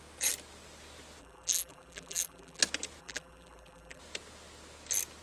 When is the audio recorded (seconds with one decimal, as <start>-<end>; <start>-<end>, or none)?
0.0-1.2; 2.6-3.0; 4.0-5.2